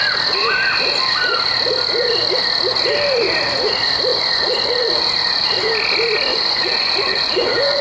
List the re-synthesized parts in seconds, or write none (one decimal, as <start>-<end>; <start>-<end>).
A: 4.1-4.7; 6.3-7.8